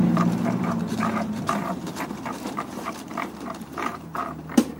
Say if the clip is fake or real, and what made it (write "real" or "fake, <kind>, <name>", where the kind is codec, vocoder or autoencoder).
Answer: fake, vocoder, BigVGAN v2